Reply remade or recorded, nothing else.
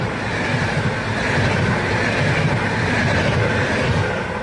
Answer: recorded